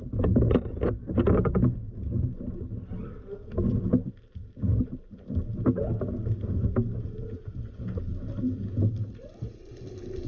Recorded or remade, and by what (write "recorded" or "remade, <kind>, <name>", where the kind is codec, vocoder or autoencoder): recorded